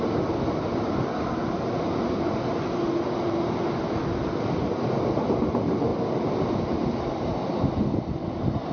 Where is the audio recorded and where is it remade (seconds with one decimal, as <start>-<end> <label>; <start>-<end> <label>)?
0.0-8.7 recorded